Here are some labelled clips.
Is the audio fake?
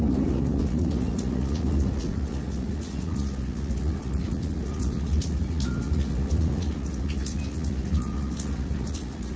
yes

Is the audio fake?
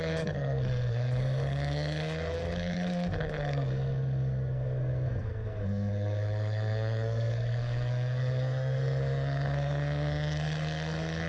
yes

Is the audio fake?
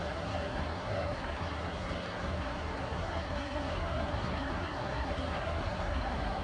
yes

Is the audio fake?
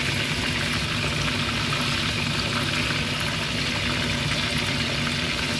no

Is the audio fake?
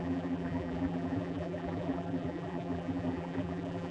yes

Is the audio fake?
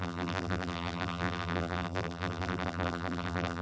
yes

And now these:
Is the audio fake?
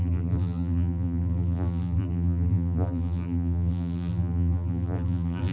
yes